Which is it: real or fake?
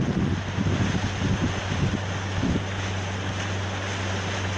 real